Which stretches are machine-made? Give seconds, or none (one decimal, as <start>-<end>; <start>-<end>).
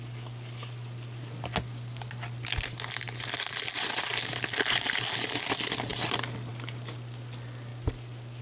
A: none